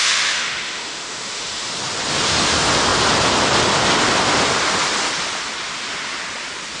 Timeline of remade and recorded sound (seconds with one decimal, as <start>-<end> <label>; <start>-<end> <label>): 0.0-1.7 remade; 1.7-6.8 recorded